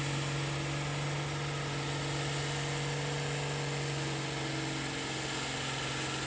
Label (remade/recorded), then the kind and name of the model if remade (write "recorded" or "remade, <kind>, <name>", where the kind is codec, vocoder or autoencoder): recorded